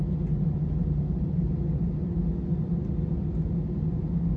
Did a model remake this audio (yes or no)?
no